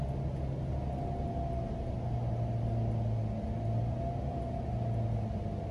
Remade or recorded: recorded